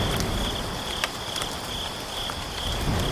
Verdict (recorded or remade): recorded